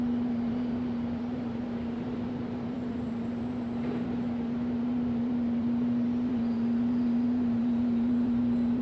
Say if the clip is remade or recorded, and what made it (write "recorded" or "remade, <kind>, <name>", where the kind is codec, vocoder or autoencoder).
remade, vocoder, BigVGAN v2